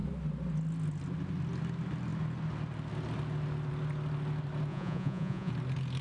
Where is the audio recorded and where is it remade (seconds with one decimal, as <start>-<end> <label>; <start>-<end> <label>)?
0.0-4.7 recorded; 4.7-5.5 remade; 5.5-6.0 recorded